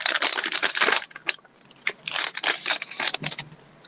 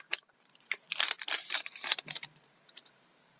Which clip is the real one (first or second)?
first